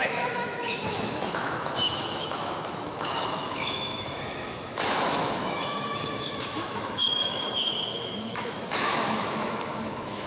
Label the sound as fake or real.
fake